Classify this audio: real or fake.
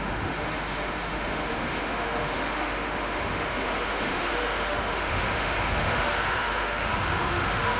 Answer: fake